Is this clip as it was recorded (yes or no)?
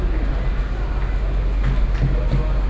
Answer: yes